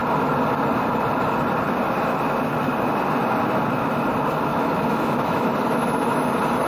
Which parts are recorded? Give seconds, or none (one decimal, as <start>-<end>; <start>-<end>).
0.0-4.5; 5.5-6.7